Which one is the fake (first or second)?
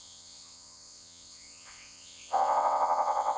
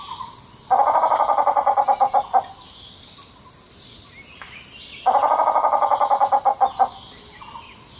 first